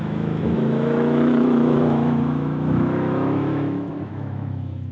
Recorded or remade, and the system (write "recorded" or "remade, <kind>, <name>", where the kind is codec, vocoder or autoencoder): remade, autoencoder, DAC-VAE